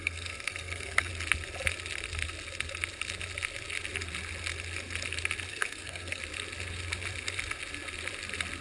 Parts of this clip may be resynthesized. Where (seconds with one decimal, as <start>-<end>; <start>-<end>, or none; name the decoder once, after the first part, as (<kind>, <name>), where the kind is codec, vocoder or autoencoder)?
0.0-1.1 (codec, SNAC); 5.5-6.2